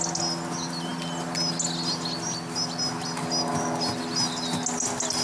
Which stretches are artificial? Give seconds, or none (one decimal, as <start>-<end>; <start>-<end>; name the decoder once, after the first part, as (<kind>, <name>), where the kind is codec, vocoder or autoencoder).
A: none